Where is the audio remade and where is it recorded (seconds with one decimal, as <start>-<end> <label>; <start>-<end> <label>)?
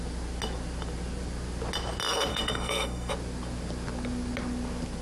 0.0-2.3 recorded; 2.3-3.1 remade; 3.1-5.0 recorded